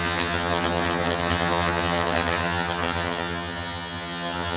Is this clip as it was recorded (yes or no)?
no